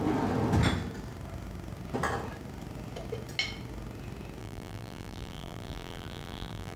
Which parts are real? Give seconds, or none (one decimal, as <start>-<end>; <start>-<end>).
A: 0.0-4.4